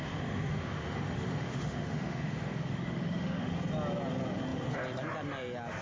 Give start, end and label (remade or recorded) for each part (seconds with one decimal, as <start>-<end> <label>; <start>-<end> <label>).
0.0-3.5 remade; 3.5-5.8 recorded